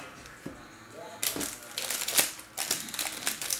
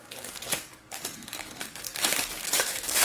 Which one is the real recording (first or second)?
first